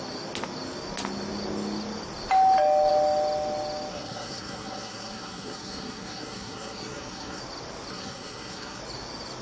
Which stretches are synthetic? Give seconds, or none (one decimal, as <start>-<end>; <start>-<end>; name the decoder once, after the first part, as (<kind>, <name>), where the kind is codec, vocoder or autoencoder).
3.9-7.4 (codec, SNAC); 7.9-8.8